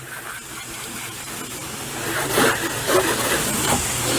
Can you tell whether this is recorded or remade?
recorded